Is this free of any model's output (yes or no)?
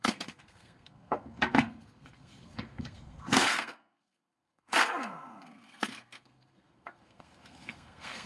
no